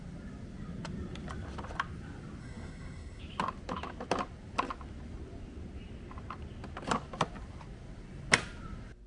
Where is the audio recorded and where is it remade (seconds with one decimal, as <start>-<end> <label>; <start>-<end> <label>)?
0.0-2.4 recorded; 2.4-3.2 remade; 3.2-9.1 recorded